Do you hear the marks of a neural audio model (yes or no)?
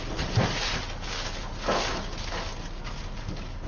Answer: no